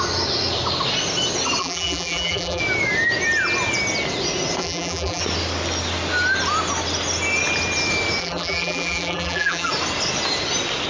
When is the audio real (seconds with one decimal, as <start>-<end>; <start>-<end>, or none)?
0.0-1.6; 2.6-4.6; 5.2-8.2; 9.7-10.9